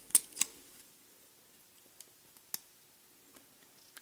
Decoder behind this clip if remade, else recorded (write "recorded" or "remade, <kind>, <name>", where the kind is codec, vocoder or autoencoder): recorded